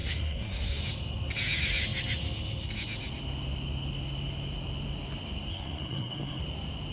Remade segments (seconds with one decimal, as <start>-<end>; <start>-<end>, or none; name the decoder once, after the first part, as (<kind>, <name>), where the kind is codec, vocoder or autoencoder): 0.0-0.8 (codec, SNAC); 5.5-6.4